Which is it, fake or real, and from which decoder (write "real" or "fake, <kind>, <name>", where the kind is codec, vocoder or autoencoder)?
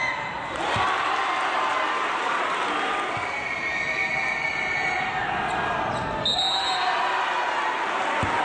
real